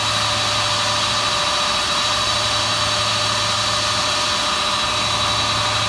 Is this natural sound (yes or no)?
yes